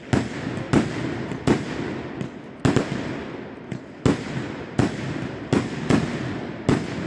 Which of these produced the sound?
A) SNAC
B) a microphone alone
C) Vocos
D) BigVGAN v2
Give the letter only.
B